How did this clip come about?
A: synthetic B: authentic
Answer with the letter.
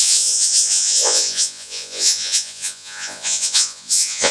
A